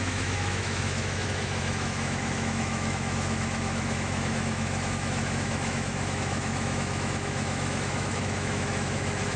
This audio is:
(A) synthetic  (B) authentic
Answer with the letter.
A